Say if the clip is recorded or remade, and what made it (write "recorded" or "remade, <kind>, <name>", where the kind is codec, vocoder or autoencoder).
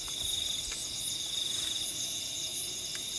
recorded